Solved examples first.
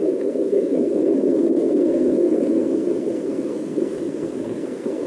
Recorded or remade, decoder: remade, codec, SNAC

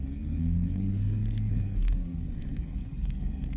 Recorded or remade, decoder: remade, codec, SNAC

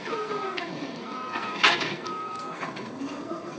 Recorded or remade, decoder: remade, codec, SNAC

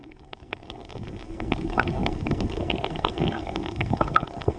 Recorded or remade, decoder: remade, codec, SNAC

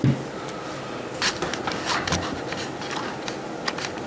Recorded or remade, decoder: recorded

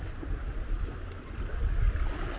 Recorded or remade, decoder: recorded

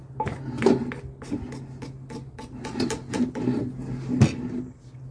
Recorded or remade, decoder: recorded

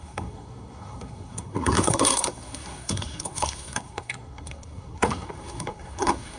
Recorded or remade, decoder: remade, codec, SNAC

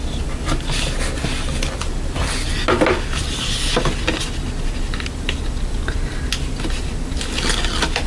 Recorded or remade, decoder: recorded